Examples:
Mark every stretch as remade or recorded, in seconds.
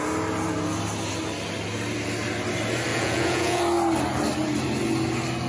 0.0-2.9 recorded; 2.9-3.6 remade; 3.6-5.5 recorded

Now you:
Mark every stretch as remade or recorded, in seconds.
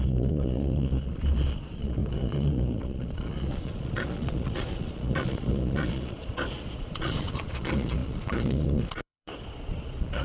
0.0-10.2 remade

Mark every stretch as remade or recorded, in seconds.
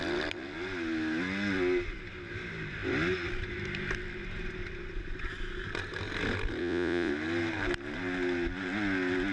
0.0-6.6 recorded; 6.6-7.1 remade; 7.1-9.3 recorded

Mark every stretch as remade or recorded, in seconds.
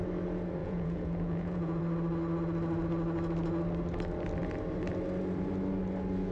0.0-0.6 recorded; 0.6-1.8 remade; 1.8-6.3 recorded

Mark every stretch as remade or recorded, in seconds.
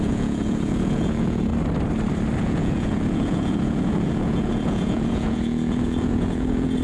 0.0-1.5 remade; 1.5-2.4 recorded; 2.4-6.8 remade